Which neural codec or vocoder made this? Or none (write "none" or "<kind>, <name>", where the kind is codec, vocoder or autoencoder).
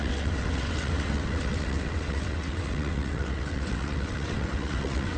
vocoder, WaveNeXt